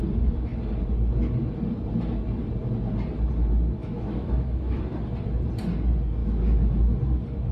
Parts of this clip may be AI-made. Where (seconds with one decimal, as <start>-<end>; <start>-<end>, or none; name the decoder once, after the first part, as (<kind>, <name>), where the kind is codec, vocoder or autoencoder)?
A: 3.8-4.8 (autoencoder, DAC-VAE); 6.2-6.8